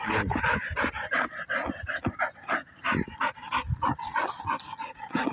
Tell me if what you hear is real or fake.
real